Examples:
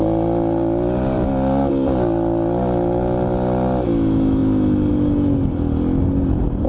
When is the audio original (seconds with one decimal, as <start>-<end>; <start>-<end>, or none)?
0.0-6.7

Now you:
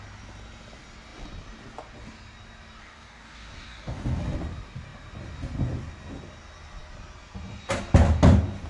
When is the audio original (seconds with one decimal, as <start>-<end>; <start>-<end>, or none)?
0.0-2.8; 4.2-8.7

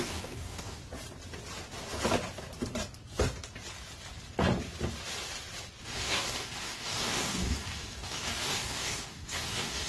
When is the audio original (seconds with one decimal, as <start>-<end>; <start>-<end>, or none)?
0.8-5.8

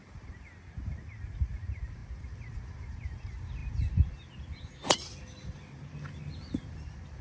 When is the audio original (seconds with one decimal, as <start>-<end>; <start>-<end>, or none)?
0.0-7.2

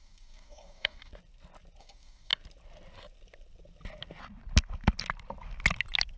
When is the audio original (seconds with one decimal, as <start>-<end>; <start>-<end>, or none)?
1.1-1.8; 2.3-6.2

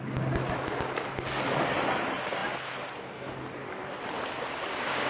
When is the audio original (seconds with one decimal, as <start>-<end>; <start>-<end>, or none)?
0.0-5.1